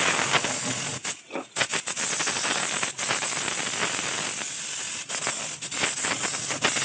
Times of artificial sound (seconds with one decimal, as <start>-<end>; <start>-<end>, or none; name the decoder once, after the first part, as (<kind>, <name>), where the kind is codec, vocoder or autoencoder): none

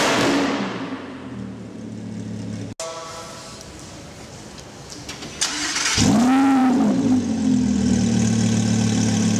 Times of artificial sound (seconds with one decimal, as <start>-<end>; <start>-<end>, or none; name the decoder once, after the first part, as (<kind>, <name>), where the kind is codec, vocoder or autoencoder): none

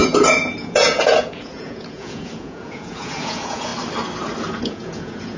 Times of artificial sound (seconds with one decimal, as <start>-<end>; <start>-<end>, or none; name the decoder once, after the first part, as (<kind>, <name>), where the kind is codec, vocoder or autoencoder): 0.0-3.7 (vocoder, Vocos); 4.6-5.4